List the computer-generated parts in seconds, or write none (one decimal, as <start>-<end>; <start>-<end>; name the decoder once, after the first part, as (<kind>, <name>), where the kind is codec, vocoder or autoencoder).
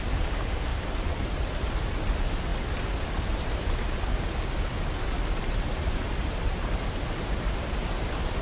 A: 0.7-2.0 (vocoder, BigVGAN v2); 2.5-3.9; 5.4-8.4